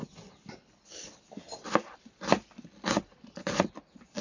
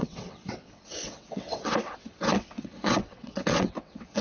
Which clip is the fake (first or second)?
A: second